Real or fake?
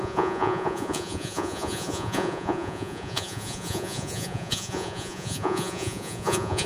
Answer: fake